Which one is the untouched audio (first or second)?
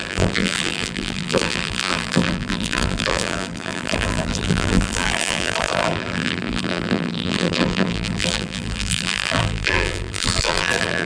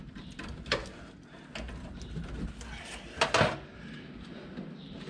second